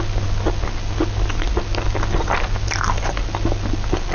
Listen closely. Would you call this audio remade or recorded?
recorded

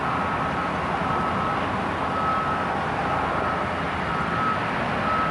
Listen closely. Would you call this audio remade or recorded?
recorded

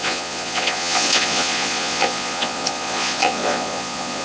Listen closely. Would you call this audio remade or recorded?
remade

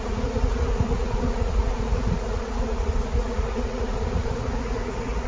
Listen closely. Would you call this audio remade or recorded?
remade